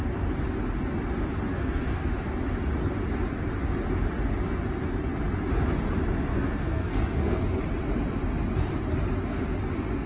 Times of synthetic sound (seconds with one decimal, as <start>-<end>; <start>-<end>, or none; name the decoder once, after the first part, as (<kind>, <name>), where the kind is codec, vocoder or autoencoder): 1.5-2.1 (codec, SNAC); 6.3-7.4